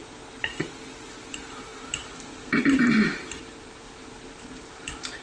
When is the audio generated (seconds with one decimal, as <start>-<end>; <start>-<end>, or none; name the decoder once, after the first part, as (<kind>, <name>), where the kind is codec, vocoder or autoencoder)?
1.1-5.2 (vocoder, BigVGAN v2)